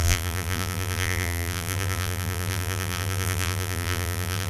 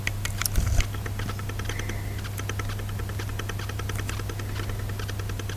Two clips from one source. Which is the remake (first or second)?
first